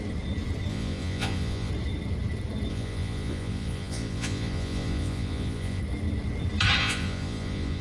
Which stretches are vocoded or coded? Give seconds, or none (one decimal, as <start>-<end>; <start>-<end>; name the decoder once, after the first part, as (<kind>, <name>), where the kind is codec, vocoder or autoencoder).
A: 0.7-1.7 (vocoder, Vocos); 2.7-5.8; 6.8-7.8

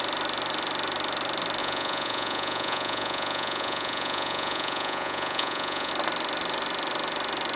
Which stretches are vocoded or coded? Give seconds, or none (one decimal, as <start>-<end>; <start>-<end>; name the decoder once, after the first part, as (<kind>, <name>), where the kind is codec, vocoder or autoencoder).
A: 1.6-5.9 (vocoder, Vocos)

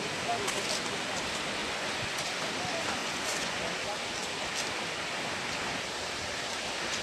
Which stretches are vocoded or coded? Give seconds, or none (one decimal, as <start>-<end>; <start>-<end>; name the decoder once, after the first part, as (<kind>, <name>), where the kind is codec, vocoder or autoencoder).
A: 1.6-2.2 (vocoder, Vocos); 3.0-3.6

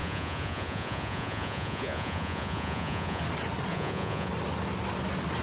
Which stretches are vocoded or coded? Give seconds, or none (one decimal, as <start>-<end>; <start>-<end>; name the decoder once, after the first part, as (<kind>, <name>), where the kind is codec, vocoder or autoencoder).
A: 0.0-3.2 (vocoder, Vocos); 3.7-4.3

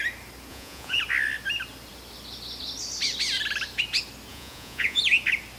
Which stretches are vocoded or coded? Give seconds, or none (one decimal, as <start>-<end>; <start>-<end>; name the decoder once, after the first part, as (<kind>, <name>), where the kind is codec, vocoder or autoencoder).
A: 0.5-1.0 (vocoder, Vocos); 4.3-5.0